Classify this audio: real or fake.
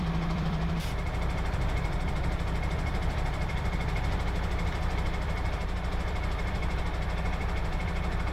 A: fake